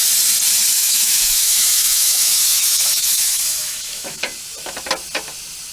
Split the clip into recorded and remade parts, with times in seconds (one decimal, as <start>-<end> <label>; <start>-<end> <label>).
0.0-0.8 recorded; 0.8-4.2 remade; 4.2-5.7 recorded